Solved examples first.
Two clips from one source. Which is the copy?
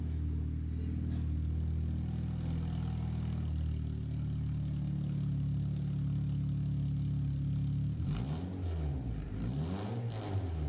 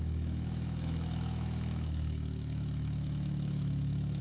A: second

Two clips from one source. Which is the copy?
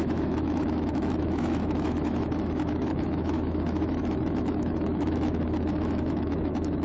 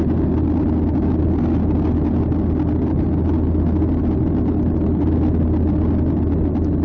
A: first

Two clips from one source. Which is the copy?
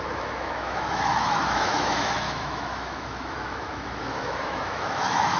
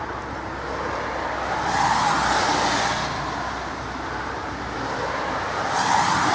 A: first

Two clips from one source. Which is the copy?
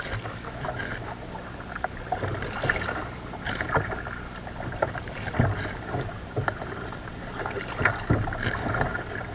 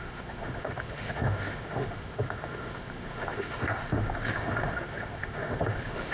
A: second